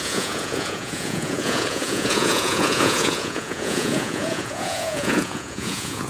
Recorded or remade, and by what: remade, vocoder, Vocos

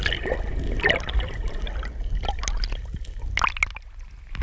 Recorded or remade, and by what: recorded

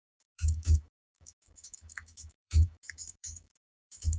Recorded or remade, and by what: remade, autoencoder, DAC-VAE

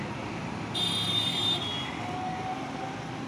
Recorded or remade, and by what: recorded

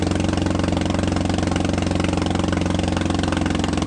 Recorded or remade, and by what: recorded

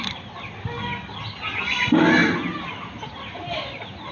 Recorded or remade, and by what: recorded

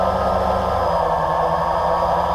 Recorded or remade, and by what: recorded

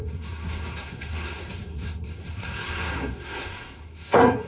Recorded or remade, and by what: remade, codec, SNAC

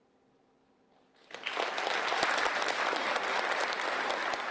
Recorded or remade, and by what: remade, vocoder, BigVGAN v2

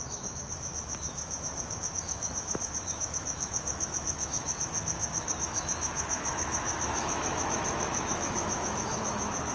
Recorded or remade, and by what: remade, autoencoder, DAC-VAE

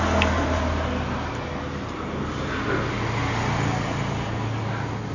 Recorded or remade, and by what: recorded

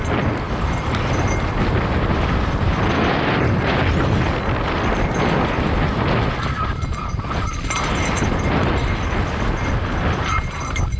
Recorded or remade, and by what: recorded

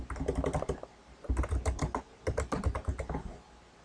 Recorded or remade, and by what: recorded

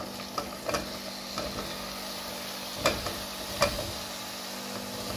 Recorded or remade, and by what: recorded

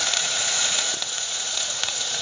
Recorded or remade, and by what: remade, vocoder, Vocos